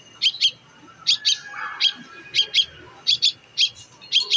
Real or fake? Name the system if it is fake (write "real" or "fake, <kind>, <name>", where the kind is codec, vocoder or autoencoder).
real